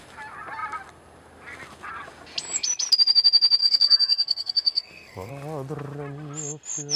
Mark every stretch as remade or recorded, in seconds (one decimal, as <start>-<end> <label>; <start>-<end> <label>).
0.0-3.6 recorded; 3.6-5.3 remade; 5.3-7.0 recorded